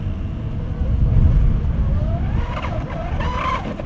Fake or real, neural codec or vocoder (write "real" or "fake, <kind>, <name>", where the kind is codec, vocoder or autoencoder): real